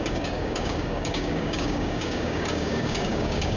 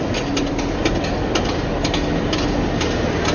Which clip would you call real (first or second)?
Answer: second